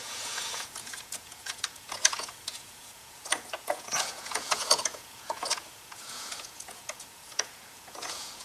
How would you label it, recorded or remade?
remade